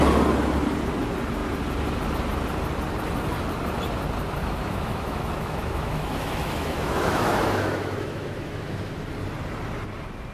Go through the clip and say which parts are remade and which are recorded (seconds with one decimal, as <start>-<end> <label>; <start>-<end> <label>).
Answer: 0.0-4.4 recorded; 4.4-8.9 remade; 8.9-10.3 recorded